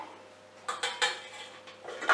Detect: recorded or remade recorded